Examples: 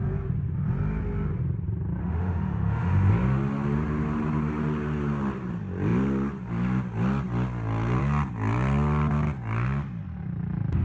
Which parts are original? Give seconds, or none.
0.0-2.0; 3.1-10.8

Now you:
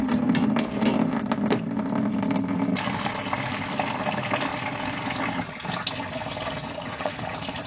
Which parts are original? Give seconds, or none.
0.0-6.6

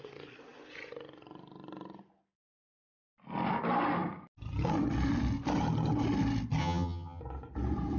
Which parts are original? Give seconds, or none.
0.0-6.6; 7.2-8.0

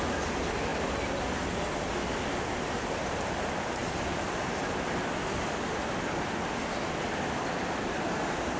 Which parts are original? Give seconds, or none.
0.0-8.6

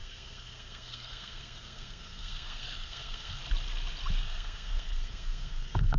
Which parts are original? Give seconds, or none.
3.4-4.2